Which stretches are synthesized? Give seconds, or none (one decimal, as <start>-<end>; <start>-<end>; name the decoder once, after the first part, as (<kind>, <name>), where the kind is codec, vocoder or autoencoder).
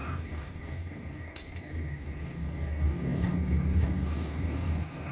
0.0-5.1 (codec, DAC)